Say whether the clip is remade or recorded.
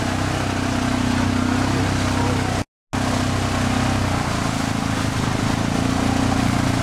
recorded